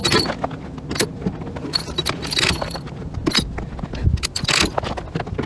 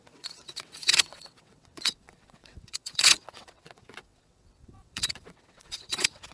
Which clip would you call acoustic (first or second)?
first